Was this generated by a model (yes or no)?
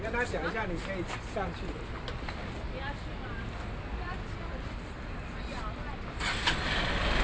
no